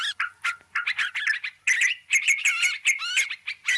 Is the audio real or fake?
real